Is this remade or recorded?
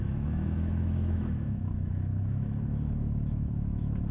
remade